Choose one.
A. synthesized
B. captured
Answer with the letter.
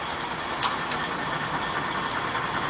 B